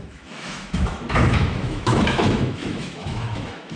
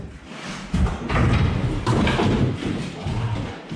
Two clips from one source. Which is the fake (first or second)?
first